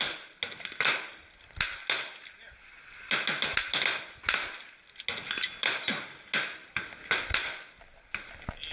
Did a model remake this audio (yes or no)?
no